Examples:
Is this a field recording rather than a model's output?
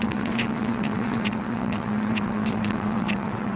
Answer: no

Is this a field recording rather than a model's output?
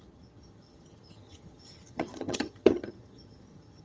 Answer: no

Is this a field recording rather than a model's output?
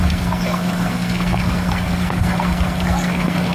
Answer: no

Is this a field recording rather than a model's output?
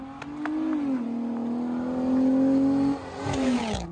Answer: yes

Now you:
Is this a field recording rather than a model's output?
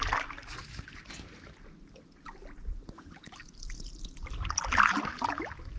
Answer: yes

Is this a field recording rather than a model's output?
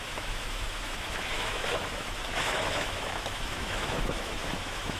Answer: no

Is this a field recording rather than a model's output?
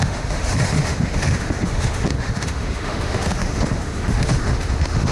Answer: no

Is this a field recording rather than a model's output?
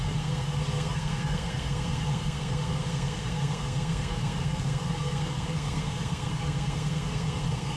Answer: no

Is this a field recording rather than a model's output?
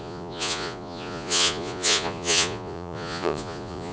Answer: no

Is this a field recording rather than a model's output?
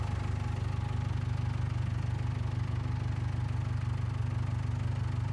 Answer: yes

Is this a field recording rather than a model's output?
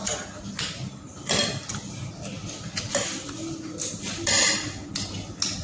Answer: yes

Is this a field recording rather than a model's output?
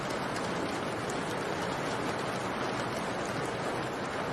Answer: yes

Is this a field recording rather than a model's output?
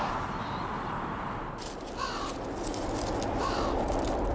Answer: yes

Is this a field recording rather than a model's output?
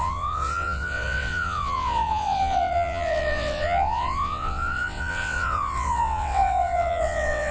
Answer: no